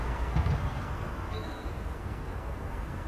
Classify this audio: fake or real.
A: fake